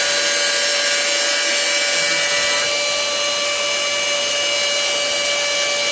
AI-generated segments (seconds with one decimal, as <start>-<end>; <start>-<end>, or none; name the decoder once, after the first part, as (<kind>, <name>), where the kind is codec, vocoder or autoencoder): none